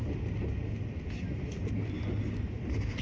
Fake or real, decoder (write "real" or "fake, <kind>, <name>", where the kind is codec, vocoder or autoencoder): real